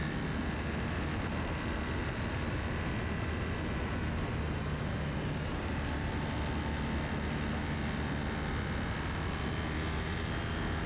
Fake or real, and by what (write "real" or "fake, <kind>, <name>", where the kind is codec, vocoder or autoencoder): real